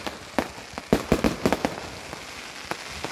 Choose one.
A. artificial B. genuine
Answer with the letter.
B